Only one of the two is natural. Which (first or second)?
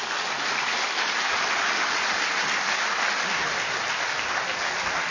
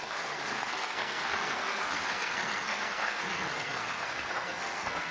first